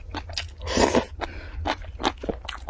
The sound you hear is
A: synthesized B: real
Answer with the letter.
B